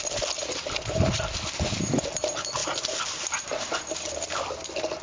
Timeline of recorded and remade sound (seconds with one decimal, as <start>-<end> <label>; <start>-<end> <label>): 0.0-2.6 recorded; 2.6-5.0 remade